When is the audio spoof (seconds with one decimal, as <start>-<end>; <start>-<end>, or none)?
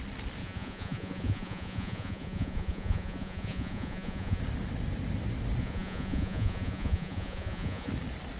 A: 0.4-4.4; 5.6-7.9